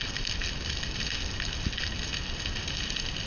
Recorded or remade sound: recorded